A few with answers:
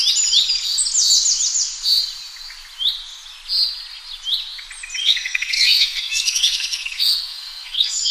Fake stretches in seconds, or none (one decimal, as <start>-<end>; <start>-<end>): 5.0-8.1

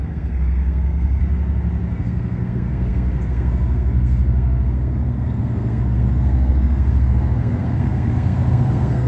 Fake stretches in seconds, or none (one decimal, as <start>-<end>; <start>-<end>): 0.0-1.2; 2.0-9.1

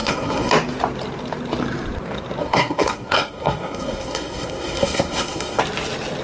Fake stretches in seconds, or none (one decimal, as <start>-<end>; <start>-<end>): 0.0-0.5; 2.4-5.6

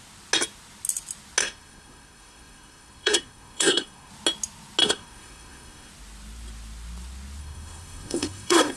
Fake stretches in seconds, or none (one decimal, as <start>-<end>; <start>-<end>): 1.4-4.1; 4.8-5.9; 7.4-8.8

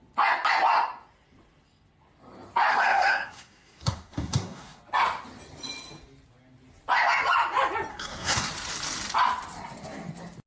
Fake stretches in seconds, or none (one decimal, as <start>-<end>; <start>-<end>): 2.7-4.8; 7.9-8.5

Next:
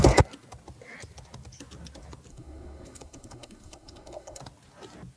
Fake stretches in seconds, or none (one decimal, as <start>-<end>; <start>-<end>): 2.3-4.4

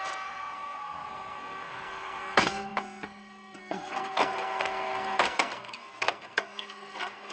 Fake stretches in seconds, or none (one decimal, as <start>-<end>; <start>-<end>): 0.0-7.3